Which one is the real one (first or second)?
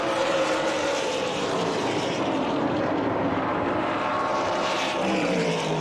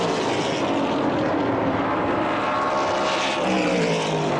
second